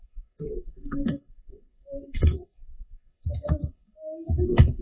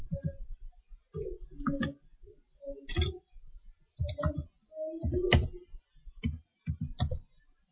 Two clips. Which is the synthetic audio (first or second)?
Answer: first